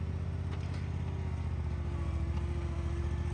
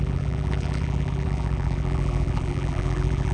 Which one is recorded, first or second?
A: first